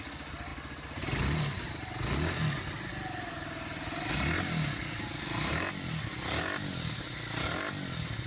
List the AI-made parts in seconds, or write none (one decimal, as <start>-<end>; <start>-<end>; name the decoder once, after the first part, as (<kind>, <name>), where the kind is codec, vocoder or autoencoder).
none